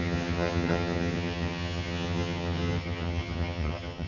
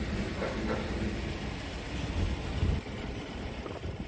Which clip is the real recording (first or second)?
second